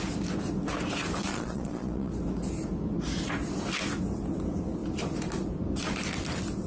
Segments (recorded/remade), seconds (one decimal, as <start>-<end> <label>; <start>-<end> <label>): 0.0-1.3 recorded; 1.3-2.1 remade; 2.1-6.7 recorded

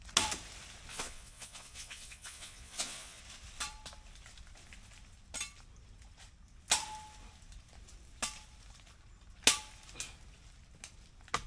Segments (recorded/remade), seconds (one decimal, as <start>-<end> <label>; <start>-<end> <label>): 0.0-0.9 recorded; 0.9-3.2 remade; 3.2-11.5 recorded